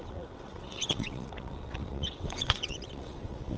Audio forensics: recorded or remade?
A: remade